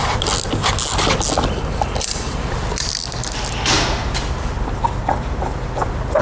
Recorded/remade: recorded